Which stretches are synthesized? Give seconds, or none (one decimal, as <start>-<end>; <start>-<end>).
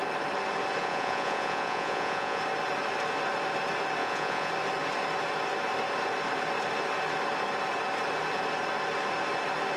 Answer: 0.8-2.4; 4.0-4.5